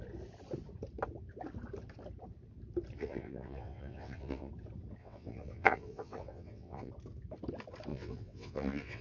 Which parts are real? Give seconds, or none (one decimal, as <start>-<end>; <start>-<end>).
0.0-3.0; 4.5-5.0; 6.9-7.9